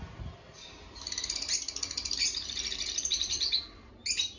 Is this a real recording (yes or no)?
yes